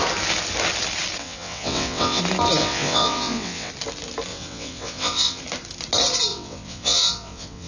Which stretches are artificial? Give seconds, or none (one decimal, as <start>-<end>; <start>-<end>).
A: 1.2-2.2; 2.6-3.7; 4.3-5.4; 6.3-7.7